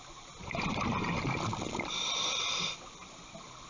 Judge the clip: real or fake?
real